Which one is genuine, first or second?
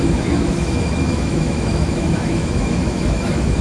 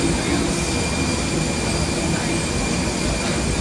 second